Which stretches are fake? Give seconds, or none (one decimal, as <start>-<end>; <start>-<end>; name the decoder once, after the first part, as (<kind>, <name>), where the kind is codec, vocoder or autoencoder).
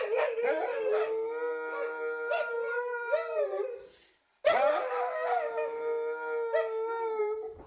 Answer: 0.0-0.9 (vocoder, BigVGAN v2); 2.3-4.1; 7.2-7.7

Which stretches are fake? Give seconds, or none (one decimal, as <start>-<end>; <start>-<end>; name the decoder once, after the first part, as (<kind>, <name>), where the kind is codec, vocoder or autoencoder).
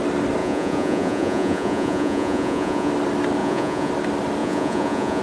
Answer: 0.4-2.9 (vocoder, Vocos); 3.4-3.9; 4.4-5.2